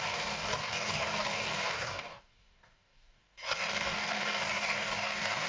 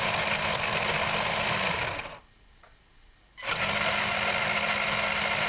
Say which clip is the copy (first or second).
first